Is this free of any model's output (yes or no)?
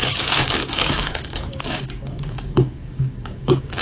no